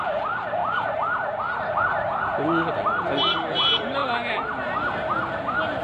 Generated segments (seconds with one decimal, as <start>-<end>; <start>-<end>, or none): none